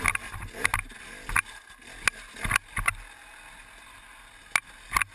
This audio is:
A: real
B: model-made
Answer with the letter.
A